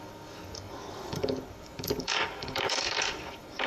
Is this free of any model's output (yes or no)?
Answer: no